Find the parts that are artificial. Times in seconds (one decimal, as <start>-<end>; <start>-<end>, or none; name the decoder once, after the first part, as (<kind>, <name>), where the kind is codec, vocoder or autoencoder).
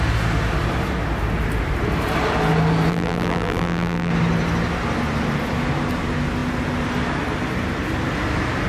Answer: 2.9-4.1 (vocoder, BigVGAN v2)